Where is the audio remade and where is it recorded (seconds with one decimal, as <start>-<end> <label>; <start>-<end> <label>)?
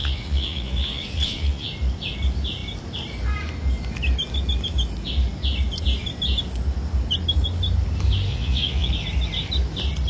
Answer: 0.0-1.7 remade; 1.7-8.3 recorded; 8.3-8.9 remade; 8.9-10.1 recorded